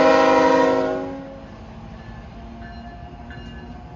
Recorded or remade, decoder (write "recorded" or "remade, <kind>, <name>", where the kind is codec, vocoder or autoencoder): recorded